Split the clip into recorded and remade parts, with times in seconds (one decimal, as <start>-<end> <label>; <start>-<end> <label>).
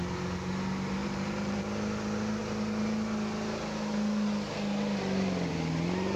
0.0-1.0 recorded; 1.0-1.6 remade; 1.6-6.2 recorded